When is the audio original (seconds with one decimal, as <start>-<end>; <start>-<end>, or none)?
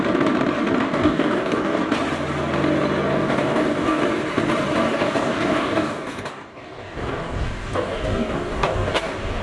0.0-0.8; 1.8-3.1; 4.0-4.9